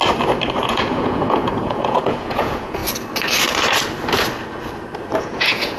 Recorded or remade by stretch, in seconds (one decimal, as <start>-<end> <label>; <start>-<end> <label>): 0.0-0.6 recorded; 0.6-2.8 remade; 2.8-5.2 recorded; 5.2-5.8 remade